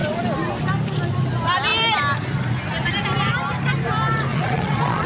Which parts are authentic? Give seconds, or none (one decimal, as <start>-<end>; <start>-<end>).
0.0-4.3